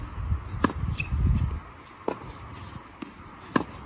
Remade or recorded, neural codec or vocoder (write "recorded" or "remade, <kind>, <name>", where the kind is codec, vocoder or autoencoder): recorded